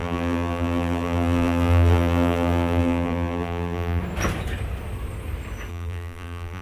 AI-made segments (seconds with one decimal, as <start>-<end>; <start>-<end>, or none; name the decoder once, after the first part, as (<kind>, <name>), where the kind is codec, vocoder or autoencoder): 0.0-4.0 (vocoder, BigVGAN v2); 5.7-6.6